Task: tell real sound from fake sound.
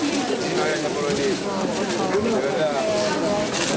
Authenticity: real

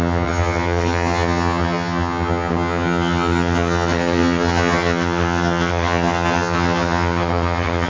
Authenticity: fake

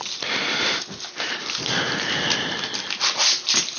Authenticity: real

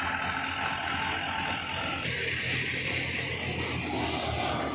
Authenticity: real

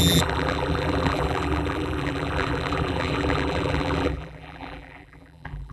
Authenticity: fake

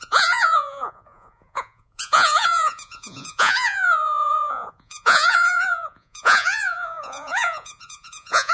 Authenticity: fake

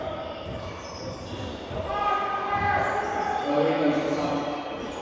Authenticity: real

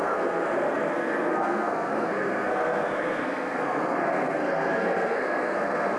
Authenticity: fake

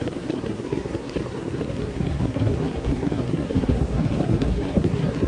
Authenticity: fake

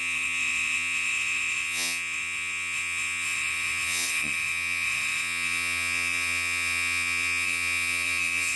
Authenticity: fake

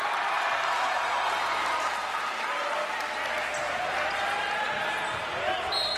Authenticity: real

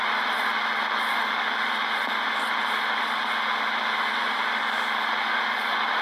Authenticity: real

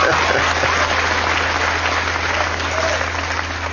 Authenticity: real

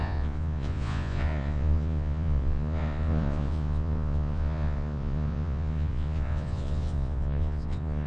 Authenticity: fake